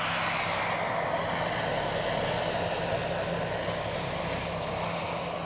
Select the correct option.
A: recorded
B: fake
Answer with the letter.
A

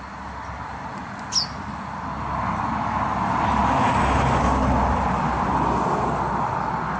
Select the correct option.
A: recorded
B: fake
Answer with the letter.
A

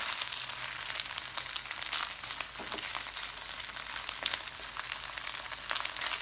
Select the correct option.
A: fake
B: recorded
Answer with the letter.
B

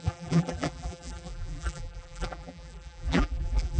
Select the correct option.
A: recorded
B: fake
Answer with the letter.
B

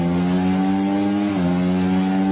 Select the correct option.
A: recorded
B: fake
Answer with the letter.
A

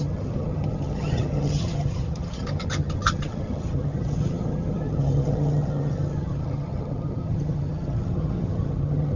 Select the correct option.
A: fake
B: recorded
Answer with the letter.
A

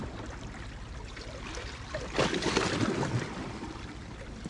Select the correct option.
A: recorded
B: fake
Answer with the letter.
A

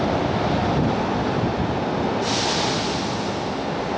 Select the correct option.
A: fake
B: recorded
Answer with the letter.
B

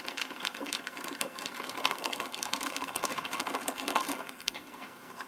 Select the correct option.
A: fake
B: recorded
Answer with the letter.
A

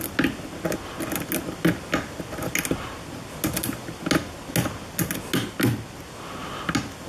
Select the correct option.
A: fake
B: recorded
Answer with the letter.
B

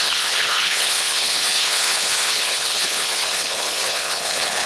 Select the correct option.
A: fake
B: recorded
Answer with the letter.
A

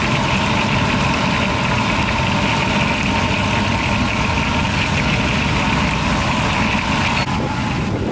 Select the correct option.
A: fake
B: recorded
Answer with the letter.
B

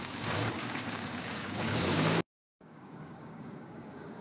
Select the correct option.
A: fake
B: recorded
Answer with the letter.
A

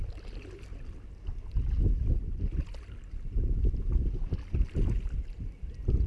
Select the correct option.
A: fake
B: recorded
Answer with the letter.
B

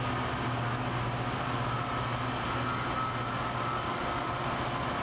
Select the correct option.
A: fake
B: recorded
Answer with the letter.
B